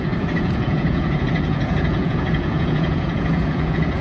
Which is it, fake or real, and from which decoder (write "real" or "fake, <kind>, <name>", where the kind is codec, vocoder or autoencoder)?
fake, vocoder, Vocos